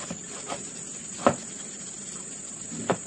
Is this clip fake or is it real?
fake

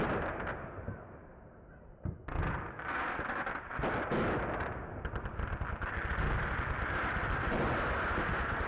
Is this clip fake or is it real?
real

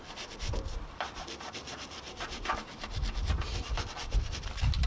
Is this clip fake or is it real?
fake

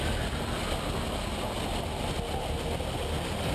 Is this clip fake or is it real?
real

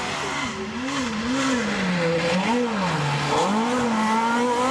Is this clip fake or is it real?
real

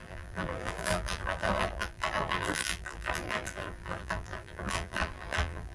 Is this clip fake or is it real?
fake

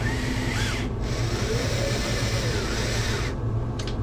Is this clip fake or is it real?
fake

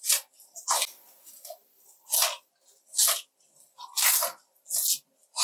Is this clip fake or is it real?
real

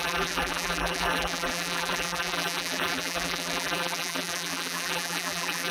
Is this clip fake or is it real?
fake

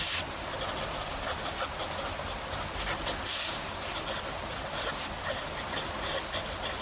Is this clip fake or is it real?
real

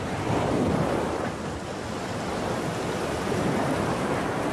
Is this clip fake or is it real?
fake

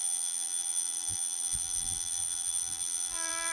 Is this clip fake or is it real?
fake